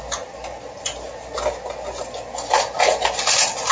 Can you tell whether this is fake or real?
real